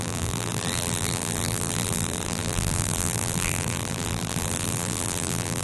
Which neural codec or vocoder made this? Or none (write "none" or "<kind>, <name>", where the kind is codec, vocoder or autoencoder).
vocoder, BigVGAN v2